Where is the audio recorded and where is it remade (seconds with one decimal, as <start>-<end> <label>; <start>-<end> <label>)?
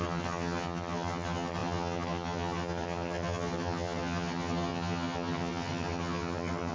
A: 0.0-6.7 remade